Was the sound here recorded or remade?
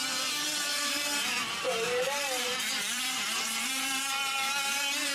remade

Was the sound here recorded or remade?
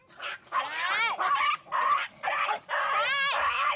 recorded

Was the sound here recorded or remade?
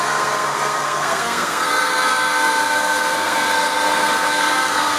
remade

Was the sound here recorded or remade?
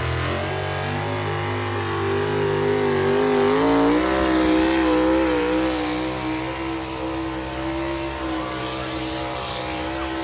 recorded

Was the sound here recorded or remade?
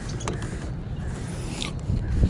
recorded